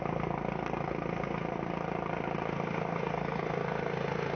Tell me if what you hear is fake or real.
real